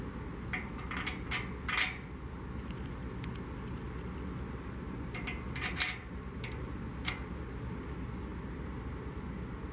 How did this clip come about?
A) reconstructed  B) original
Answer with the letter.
B